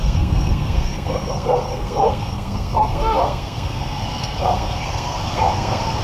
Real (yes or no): no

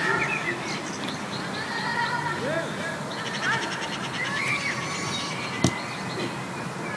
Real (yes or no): yes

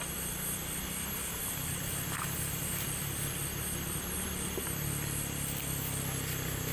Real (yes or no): yes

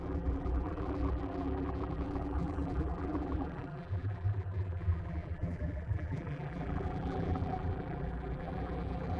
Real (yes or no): no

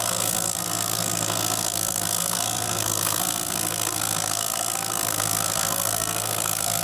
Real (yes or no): no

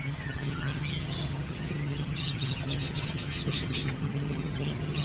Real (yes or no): no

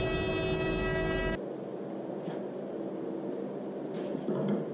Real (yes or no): yes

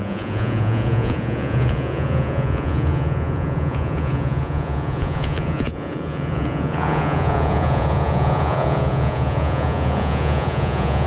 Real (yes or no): no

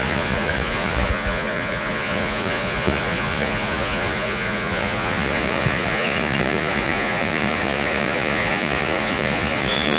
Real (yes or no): no